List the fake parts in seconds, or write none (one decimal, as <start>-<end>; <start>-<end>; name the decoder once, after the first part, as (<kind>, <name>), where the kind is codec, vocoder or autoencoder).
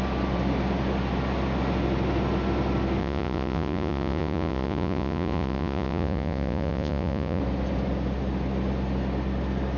3.0-7.4 (vocoder, Vocos)